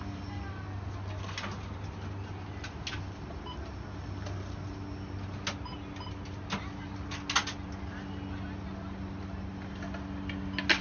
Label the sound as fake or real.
real